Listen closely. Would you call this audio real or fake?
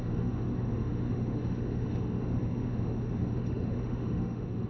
fake